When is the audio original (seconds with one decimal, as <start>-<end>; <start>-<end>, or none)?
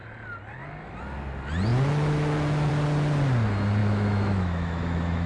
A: 0.0-3.8